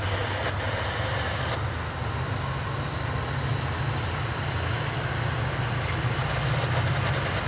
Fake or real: real